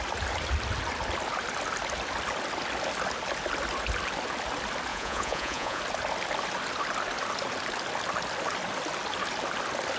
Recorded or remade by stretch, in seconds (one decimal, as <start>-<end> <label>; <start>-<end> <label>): 0.0-4.9 recorded; 4.9-5.8 remade; 5.8-10.0 recorded